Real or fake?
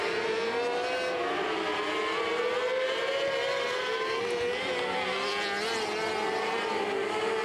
real